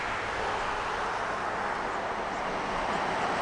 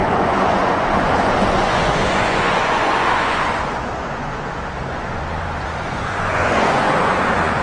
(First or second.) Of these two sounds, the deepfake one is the second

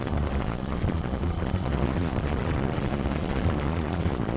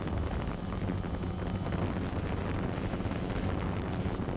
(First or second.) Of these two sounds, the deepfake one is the first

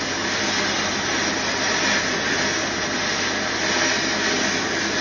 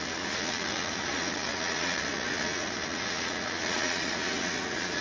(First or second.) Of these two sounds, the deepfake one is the second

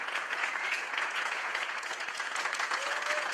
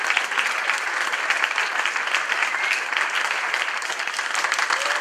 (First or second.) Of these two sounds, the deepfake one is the first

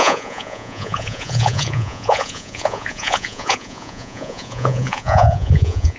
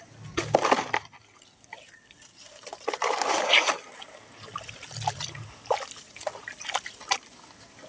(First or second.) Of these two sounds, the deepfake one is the first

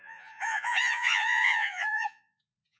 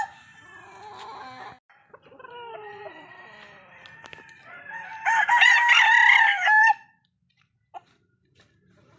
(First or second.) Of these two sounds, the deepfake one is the first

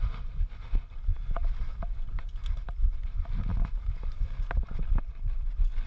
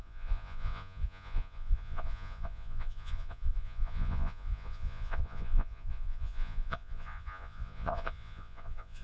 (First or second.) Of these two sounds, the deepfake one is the second